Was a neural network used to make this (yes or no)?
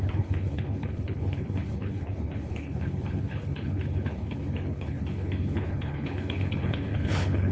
yes